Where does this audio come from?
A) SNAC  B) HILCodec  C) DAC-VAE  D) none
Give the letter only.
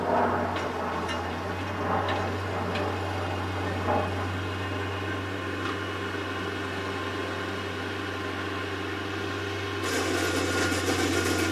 D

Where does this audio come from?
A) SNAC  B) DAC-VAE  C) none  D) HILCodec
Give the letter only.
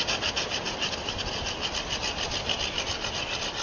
C